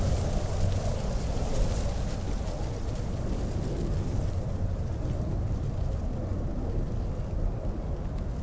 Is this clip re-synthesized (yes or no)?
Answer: no